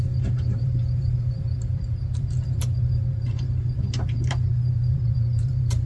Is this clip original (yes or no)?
no